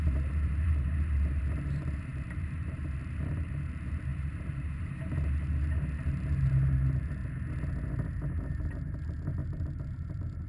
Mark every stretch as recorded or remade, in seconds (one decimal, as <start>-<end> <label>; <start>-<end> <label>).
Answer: 0.0-7.2 remade; 7.2-8.3 recorded; 8.3-10.5 remade